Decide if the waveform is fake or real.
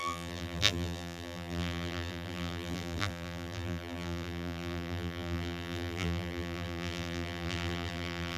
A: fake